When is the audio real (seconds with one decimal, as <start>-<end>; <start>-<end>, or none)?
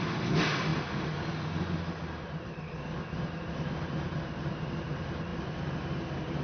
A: 0.0-6.4